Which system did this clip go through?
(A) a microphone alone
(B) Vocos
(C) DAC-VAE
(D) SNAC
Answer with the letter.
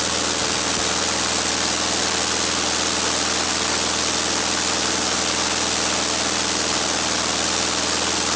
A